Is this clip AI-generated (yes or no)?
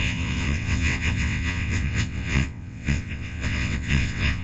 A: yes